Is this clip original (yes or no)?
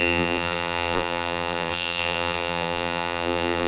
no